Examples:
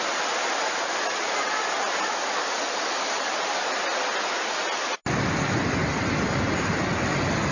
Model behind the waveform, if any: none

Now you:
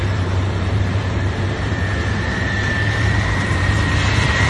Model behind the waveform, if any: vocoder, BigVGAN v2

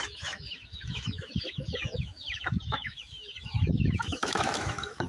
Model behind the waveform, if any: autoencoder, DAC-VAE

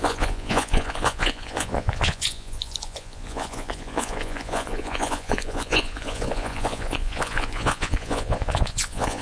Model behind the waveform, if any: vocoder, Vocos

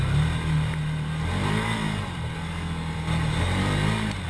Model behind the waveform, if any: none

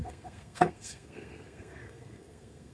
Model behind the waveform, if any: codec, SNAC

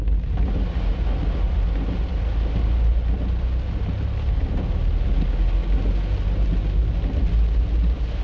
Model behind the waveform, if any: none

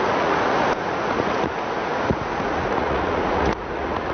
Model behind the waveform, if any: vocoder, Vocos